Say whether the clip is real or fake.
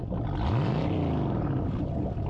real